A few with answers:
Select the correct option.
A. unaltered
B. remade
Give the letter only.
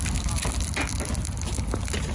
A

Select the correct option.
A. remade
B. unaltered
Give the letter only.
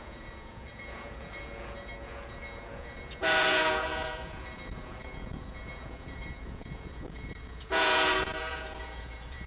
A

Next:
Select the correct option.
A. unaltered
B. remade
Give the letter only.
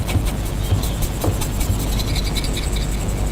A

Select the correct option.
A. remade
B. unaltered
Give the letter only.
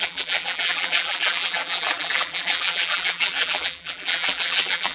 A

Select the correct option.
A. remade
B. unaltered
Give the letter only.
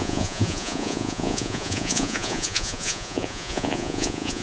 A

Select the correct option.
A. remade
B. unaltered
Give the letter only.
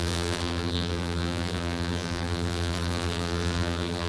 A